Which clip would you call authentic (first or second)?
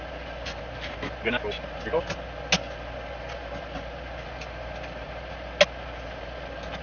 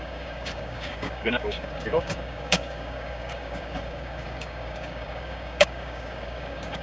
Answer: first